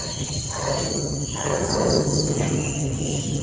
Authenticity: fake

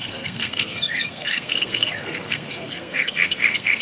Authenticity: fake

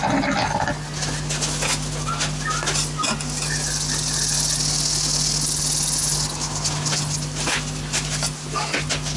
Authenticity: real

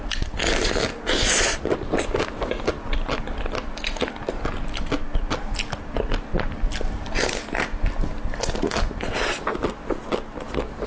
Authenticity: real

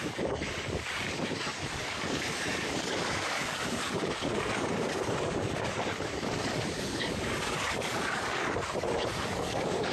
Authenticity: fake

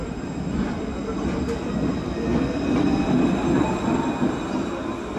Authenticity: real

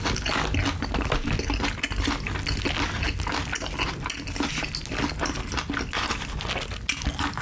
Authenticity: real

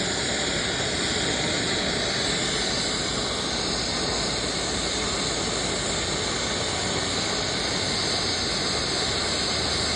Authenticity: real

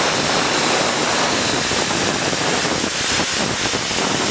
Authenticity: real